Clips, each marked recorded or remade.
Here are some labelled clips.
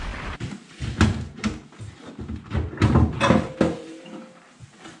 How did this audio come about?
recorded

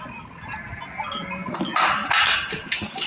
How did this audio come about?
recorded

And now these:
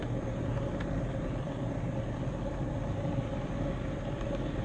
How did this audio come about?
recorded